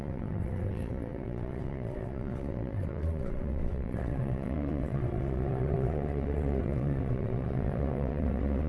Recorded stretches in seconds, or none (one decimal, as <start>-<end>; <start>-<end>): none